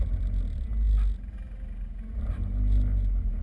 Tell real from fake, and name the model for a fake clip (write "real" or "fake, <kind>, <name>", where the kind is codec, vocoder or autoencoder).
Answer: real